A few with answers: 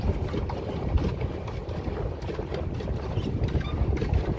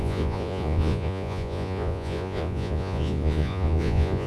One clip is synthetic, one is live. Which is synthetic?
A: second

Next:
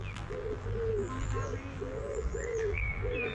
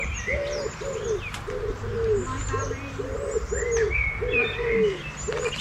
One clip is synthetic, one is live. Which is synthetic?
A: first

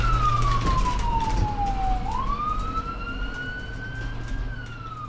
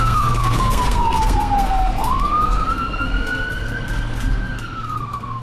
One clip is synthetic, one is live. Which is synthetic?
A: second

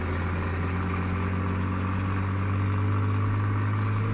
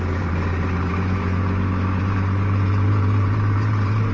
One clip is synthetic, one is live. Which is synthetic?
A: second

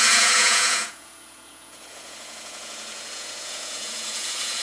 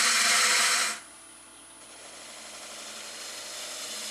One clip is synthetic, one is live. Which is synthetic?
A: first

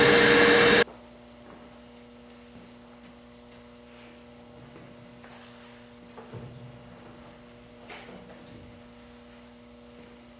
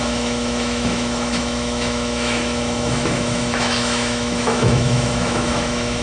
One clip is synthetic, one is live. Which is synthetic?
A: second